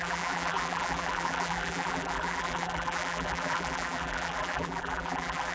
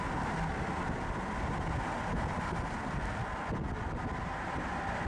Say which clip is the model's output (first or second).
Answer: first